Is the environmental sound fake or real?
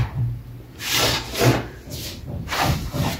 fake